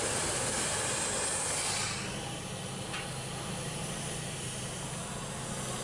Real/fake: real